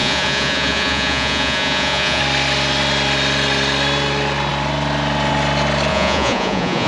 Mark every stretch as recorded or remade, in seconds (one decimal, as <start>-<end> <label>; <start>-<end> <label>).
0.0-2.2 remade; 2.2-5.9 recorded; 5.9-6.9 remade